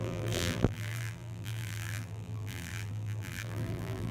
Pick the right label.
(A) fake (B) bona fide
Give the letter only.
A